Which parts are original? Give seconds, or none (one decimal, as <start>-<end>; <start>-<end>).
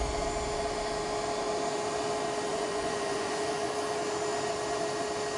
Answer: 0.0-2.5; 3.7-5.4